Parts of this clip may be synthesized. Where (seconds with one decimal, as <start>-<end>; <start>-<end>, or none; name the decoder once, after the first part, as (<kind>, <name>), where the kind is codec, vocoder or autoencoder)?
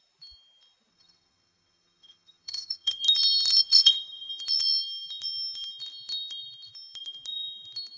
0.9-3.0 (vocoder, HiFi-GAN); 3.6-4.3